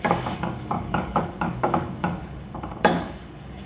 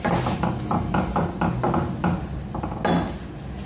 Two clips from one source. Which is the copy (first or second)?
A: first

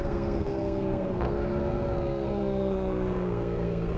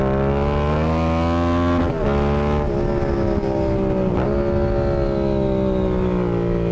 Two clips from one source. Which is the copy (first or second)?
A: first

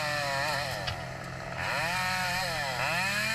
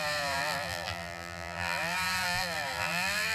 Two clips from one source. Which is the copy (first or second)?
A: second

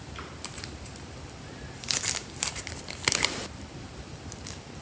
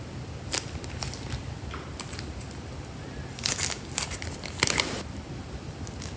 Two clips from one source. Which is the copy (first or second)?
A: first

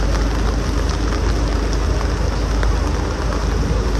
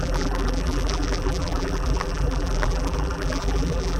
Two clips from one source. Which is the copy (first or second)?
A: second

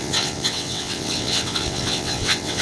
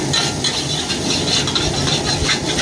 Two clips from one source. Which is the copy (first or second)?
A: first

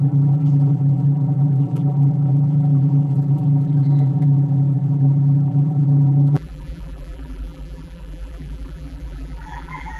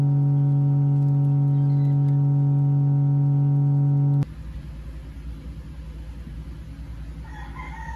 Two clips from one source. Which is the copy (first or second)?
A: first